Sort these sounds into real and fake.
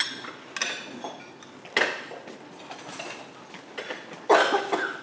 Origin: real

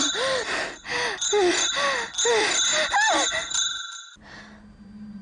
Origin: real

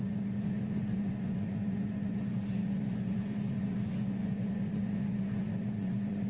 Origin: fake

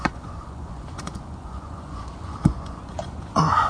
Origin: fake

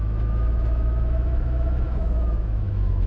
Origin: fake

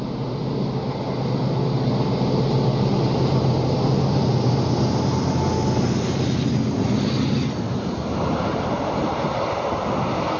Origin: real